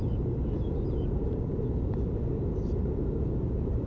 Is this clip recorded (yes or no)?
no